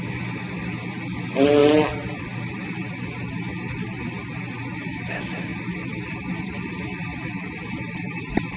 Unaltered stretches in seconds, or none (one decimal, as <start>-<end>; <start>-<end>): 0.0-8.6